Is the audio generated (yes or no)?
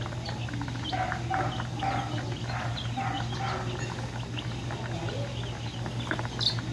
no